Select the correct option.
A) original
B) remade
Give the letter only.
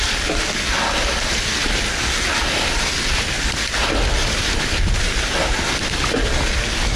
A